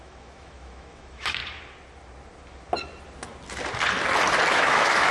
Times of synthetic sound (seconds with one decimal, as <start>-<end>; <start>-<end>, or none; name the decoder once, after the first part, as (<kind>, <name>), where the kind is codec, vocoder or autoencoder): 0.0-1.4 (autoencoder, DAC-VAE); 4.5-5.1